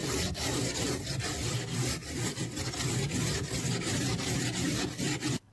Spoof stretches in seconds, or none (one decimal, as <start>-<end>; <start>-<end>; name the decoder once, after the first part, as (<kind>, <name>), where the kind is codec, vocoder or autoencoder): 0.0-1.2 (vocoder, BigVGAN v2); 2.0-4.9